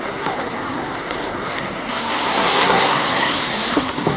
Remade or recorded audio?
remade